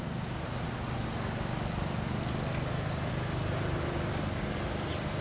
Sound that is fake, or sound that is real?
real